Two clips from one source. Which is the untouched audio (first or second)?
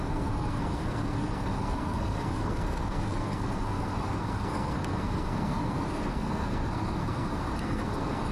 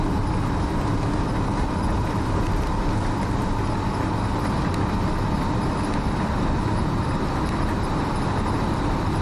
second